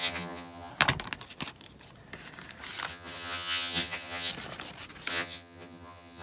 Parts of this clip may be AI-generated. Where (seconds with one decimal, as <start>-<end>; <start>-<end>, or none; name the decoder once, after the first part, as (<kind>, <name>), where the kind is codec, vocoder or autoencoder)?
0.0-0.7 (vocoder, HiFi-GAN); 2.9-4.3; 5.1-6.2